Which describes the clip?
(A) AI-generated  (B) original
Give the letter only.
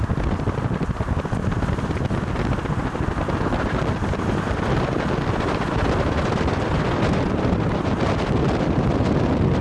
A